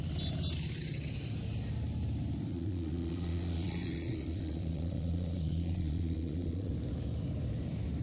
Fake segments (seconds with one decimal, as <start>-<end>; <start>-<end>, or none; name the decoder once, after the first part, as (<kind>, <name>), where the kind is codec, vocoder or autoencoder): 2.5-6.7 (vocoder, Vocos)